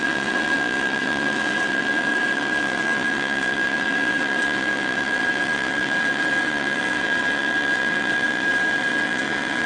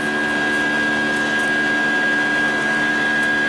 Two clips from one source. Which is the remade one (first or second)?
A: first